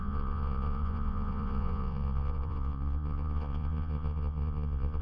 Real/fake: fake